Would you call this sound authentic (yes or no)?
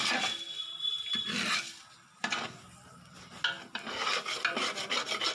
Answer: yes